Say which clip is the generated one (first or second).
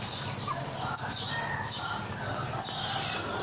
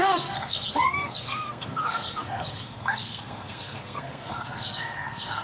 second